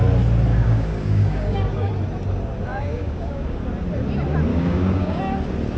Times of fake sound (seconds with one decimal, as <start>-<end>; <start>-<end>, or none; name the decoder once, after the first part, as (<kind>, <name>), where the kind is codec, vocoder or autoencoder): 0.5-1.9 (codec, DAC); 2.7-3.6; 4.5-5.2